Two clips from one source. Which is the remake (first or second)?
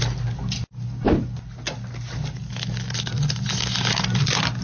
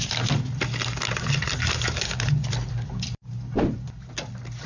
second